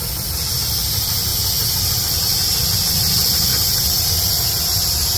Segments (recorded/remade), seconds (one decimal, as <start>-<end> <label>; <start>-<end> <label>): 0.0-3.5 recorded; 3.5-4.3 remade; 4.3-5.2 recorded